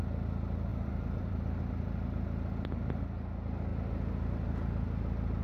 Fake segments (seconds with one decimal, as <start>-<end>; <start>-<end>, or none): 0.7-1.6